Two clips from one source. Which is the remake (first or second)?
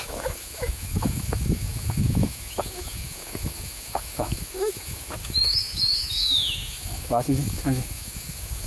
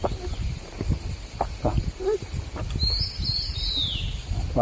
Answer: first